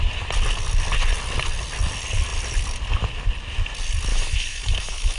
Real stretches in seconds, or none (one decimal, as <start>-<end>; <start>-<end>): 0.0-4.1